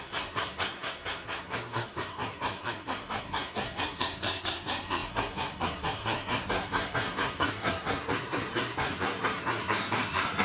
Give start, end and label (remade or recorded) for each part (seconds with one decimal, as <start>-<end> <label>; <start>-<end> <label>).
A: 0.0-10.4 remade